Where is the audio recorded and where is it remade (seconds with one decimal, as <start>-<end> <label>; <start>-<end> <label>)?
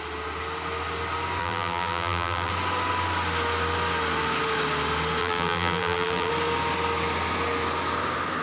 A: 0.0-1.4 recorded; 1.4-2.5 remade; 2.5-5.2 recorded; 5.2-6.3 remade; 6.3-8.4 recorded